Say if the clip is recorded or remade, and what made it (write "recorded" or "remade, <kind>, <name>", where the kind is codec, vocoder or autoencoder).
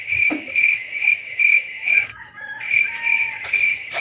remade, autoencoder, DAC-VAE